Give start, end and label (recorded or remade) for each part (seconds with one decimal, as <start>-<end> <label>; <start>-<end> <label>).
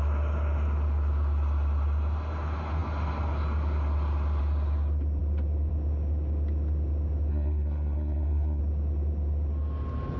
0.0-7.3 recorded; 7.3-8.6 remade; 8.6-10.2 recorded